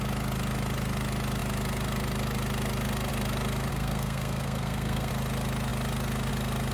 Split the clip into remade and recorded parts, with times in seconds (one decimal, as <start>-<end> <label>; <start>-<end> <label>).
0.0-3.7 recorded; 3.7-5.1 remade; 5.1-6.7 recorded